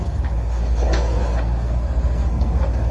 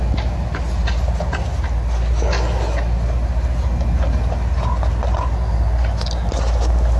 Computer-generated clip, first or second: first